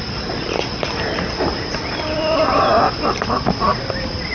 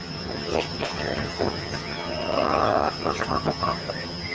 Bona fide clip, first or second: first